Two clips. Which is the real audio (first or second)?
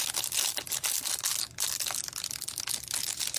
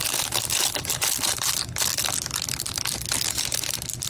first